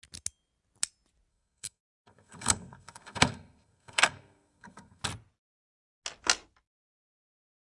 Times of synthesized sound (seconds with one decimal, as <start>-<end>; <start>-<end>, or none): 1.3-5.0